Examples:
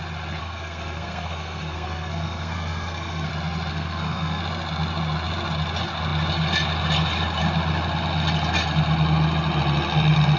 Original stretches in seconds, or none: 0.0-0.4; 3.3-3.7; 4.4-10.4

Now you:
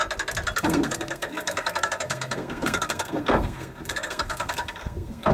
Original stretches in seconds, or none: 0.0-0.6

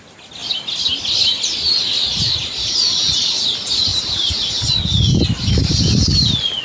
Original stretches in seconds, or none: 0.0-6.6

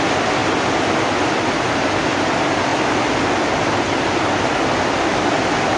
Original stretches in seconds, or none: 0.0-5.8

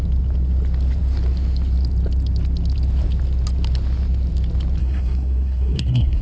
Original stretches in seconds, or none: 0.0-4.8

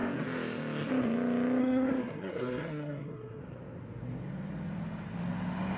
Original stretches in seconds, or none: 0.0-1.6; 3.4-5.8

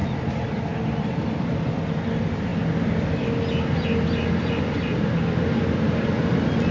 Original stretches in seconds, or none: 0.0-6.7